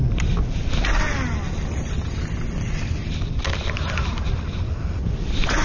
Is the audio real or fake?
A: real